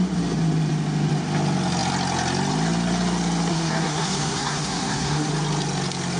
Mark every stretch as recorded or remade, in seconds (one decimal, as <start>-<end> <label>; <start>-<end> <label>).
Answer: 0.0-3.5 recorded; 3.5-5.3 remade; 5.3-6.2 recorded